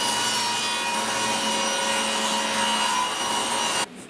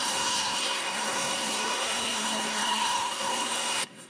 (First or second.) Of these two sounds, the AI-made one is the second